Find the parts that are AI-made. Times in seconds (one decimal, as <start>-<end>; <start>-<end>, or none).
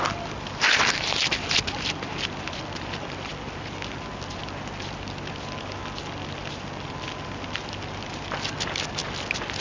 none